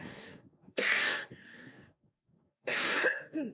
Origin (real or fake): fake